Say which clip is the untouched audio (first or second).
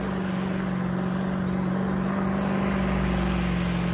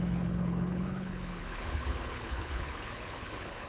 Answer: first